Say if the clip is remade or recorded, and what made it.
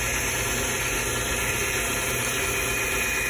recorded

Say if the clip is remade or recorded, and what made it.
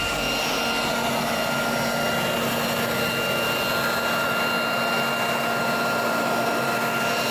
recorded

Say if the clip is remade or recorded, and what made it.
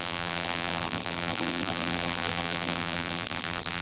remade, vocoder, BigVGAN v2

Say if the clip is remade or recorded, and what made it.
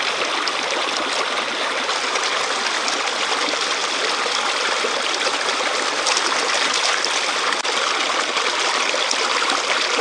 recorded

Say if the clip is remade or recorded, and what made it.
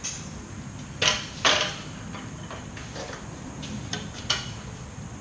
recorded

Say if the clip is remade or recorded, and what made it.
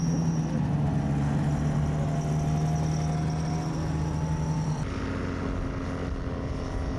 recorded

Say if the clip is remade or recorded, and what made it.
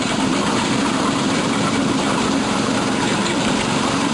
remade, vocoder, BigVGAN v2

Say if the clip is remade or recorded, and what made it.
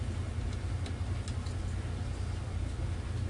recorded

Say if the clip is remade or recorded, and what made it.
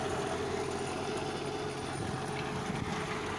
recorded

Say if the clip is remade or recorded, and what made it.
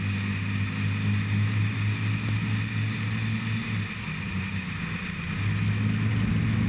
recorded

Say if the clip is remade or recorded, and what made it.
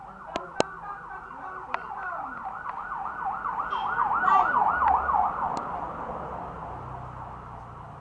recorded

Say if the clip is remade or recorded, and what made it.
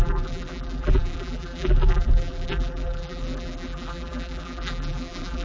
remade, vocoder, BigVGAN v2